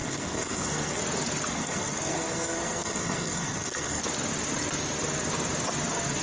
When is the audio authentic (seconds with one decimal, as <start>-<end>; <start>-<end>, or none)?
1.0-1.5; 4.0-6.2